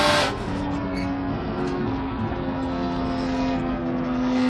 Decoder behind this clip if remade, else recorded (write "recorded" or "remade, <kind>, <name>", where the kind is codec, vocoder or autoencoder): remade, codec, SNAC